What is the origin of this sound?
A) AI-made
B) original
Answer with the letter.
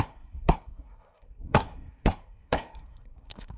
A